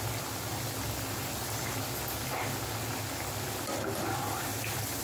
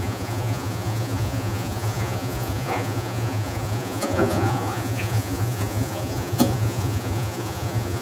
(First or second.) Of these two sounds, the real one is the first